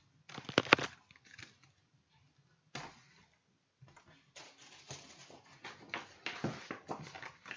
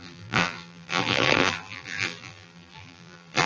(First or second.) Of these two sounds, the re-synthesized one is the second